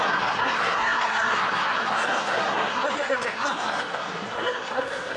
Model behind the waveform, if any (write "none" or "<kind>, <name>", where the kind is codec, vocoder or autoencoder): codec, SNAC